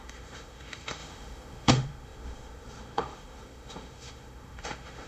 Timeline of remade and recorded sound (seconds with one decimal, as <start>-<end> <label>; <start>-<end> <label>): 0.0-5.1 remade

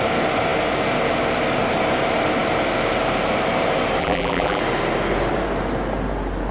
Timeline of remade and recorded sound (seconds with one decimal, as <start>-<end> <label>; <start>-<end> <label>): 0.0-4.0 recorded; 4.0-4.6 remade; 4.6-6.5 recorded

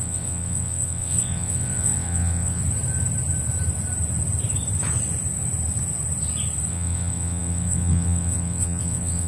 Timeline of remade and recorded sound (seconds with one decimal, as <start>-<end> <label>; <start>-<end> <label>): 0.0-2.6 remade; 2.6-6.7 recorded; 6.7-9.3 remade

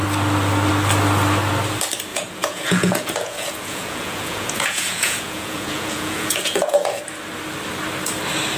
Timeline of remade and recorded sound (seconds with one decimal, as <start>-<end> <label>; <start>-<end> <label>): 0.0-2.1 recorded; 2.1-7.0 remade; 7.0-8.6 recorded

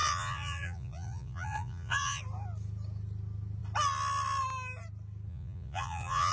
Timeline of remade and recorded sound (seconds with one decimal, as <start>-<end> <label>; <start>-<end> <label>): 0.0-2.2 remade; 2.2-5.3 recorded; 5.3-6.3 remade

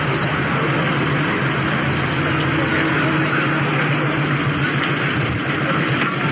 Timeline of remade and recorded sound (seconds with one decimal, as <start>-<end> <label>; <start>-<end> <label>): 0.0-6.3 recorded

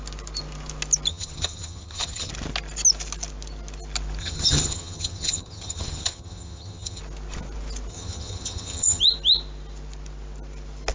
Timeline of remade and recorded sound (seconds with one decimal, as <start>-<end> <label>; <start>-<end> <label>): 0.0-1.1 recorded; 1.1-2.3 remade; 2.3-4.2 recorded; 4.2-7.0 remade; 7.0-7.9 recorded; 7.9-9.0 remade; 9.0-10.9 recorded